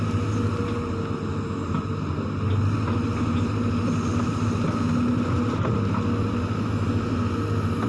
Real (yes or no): yes